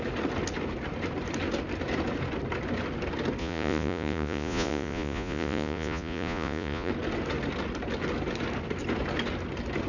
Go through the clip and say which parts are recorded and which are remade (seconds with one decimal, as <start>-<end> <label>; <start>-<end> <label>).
0.0-3.4 recorded; 3.4-6.9 remade; 6.9-9.9 recorded

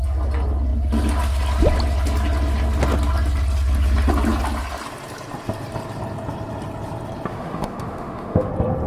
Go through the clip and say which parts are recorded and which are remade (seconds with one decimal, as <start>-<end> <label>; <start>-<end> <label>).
0.0-7.3 recorded; 7.3-8.5 remade; 8.5-8.9 recorded

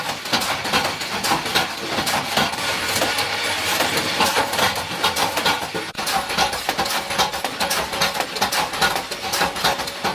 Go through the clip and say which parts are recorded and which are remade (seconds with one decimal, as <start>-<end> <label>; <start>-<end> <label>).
0.0-1.5 recorded; 1.5-5.7 remade; 5.7-10.1 recorded

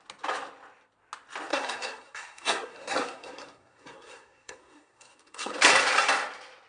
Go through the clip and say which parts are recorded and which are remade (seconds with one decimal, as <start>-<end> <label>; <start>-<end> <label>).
0.0-1.5 recorded; 1.5-5.5 remade; 5.5-6.7 recorded

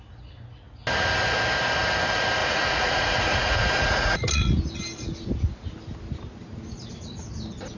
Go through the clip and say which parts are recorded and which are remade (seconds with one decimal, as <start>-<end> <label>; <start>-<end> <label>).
0.0-2.4 recorded; 2.4-4.6 remade; 4.6-7.8 recorded

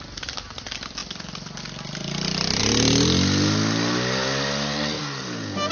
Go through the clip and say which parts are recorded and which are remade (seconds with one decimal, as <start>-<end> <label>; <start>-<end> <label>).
0.0-5.7 recorded